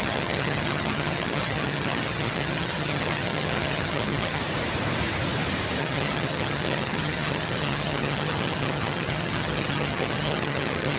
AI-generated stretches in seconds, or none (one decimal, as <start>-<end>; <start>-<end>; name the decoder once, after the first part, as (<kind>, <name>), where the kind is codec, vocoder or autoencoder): 0.0-4.4 (vocoder, HiFi-GAN); 5.8-11.0